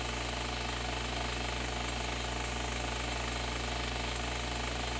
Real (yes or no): yes